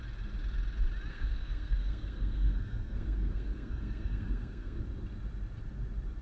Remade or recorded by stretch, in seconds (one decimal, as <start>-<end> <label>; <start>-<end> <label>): 0.0-1.1 recorded; 1.1-4.8 remade; 4.8-6.2 recorded